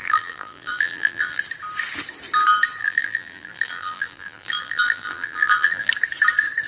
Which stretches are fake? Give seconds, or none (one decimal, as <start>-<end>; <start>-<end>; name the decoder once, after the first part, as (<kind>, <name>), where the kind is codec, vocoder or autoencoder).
0.0-1.4 (vocoder, BigVGAN v2); 2.8-5.9